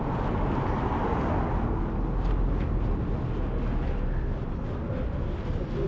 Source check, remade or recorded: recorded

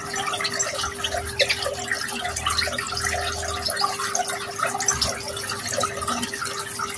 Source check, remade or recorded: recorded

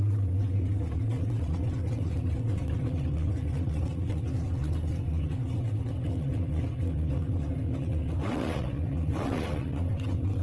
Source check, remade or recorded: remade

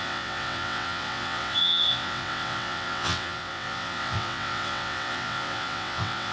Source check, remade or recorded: remade